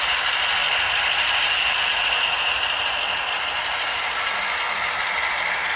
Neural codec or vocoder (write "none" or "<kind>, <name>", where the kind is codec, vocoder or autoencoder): none